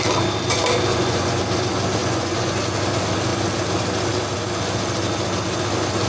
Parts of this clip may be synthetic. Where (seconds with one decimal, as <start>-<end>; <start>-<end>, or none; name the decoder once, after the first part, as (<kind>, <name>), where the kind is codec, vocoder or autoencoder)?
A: 0.9-1.4 (vocoder, Vocos); 2.0-2.6

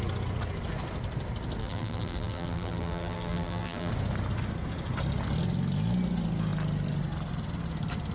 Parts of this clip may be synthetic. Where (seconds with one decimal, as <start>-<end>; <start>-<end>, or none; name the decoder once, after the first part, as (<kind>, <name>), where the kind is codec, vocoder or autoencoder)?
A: 1.6-3.9 (vocoder, BigVGAN v2)

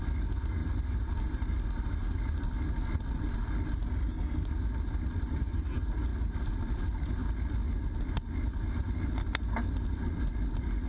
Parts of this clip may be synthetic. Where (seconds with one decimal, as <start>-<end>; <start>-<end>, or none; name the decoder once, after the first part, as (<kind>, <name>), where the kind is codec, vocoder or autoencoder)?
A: 3.8-4.5 (codec, DAC)

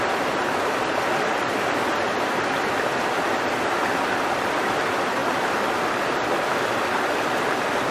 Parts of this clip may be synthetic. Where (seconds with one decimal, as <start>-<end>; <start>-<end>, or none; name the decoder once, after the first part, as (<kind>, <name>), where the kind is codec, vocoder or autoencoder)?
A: 5.2-6.6 (vocoder, BigVGAN v2)

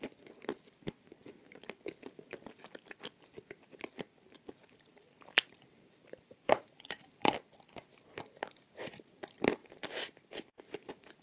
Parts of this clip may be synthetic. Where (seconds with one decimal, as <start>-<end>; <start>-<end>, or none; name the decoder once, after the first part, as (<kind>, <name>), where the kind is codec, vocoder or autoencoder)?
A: 4.9-7.3 (vocoder, BigVGAN v2)